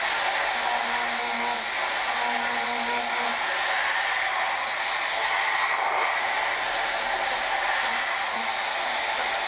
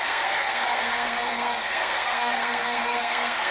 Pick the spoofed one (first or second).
second